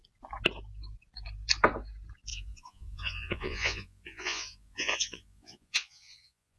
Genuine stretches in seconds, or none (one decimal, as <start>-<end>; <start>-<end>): 0.0-2.3